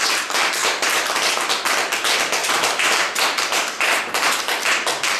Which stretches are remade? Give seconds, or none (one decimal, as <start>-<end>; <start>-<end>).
0.6-1.3; 2.4-4.0